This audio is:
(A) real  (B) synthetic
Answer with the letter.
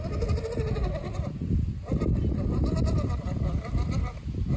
A